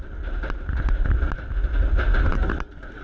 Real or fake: real